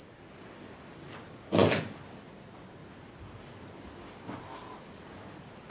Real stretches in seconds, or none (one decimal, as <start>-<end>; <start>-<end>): 0.0-5.7